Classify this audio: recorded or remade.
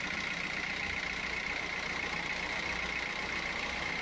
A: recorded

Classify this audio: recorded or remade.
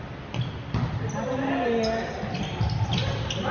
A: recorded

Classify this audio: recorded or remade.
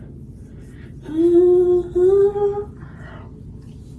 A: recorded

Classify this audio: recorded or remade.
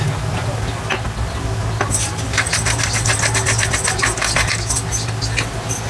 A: recorded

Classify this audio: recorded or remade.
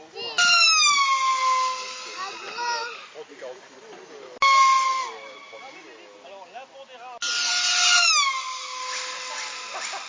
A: recorded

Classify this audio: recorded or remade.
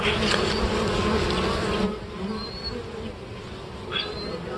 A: recorded